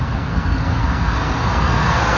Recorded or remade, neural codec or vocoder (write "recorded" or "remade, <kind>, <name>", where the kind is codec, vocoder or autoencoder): remade, codec, SNAC